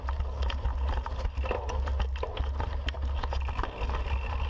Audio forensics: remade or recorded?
recorded